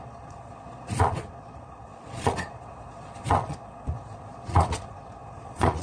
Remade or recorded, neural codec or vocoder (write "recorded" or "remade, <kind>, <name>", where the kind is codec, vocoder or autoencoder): remade, vocoder, Vocos